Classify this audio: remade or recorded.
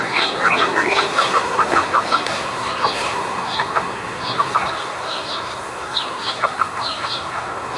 remade